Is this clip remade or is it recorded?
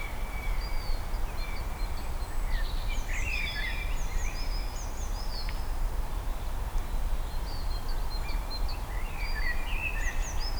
recorded